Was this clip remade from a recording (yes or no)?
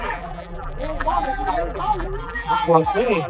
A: yes